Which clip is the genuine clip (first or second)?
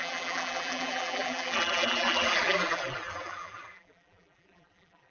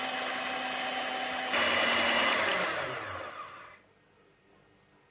second